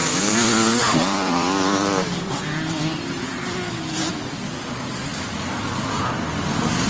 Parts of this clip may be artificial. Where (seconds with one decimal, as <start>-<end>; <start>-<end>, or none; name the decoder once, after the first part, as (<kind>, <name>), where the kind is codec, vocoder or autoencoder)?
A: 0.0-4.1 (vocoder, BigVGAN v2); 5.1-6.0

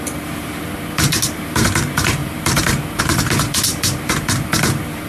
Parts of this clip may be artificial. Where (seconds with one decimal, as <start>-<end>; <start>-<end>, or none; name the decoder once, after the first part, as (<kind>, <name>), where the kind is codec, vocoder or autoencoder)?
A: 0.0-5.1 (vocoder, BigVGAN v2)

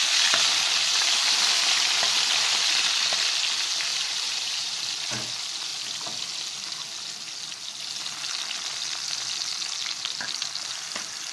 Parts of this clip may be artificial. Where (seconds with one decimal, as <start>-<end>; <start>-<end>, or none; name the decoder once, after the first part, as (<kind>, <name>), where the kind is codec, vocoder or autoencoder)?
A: 3.9-4.8 (vocoder, BigVGAN v2)

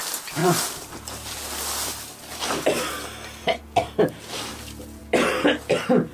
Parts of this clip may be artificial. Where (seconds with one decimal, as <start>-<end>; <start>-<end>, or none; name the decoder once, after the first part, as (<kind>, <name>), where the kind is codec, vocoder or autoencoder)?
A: none

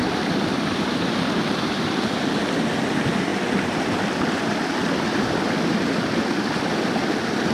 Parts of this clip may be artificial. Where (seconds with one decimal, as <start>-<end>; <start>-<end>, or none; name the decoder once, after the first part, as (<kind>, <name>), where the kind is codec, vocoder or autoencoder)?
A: 0.5-2.4 (vocoder, BigVGAN v2); 3.3-4.0

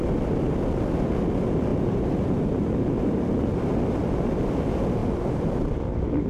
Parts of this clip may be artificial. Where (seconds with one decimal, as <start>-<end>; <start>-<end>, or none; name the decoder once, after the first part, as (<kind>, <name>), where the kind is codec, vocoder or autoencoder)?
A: 1.7-3.2 (vocoder, BigVGAN v2); 5.0-6.3

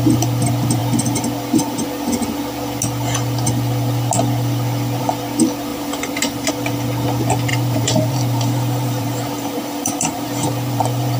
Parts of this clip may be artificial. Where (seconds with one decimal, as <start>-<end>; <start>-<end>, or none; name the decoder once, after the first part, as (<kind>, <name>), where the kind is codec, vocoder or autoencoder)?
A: 5.7-6.5 (vocoder, BigVGAN v2); 7.5-11.2